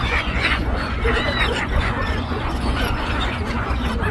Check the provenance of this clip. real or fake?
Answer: fake